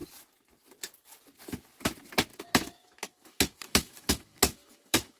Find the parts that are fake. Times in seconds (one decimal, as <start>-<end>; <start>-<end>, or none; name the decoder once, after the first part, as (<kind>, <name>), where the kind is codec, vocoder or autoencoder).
2.3-5.2 (autoencoder, DAC-VAE)